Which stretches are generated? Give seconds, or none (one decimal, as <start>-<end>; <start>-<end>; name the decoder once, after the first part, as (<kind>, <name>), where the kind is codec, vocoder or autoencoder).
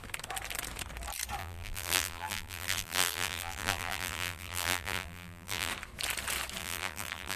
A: 1.4-5.7 (vocoder, BigVGAN v2); 6.6-7.4